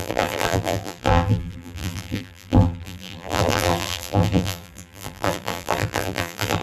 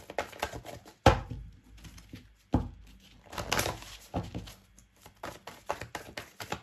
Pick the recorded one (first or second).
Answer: second